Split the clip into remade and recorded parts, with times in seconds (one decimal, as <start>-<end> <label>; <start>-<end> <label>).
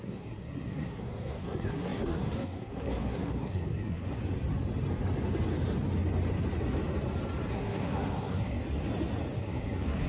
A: 0.0-4.2 remade; 4.2-7.5 recorded; 7.5-8.6 remade; 8.6-9.4 recorded; 9.4-10.1 remade